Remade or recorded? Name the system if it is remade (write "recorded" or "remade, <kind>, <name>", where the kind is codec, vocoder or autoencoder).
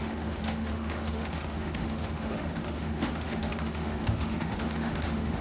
remade, autoencoder, DAC-VAE